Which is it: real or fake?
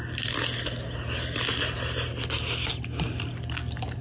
real